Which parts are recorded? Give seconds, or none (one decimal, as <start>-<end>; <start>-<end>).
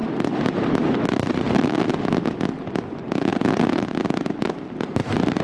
none